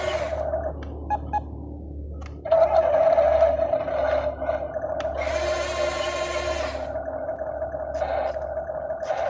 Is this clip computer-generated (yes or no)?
no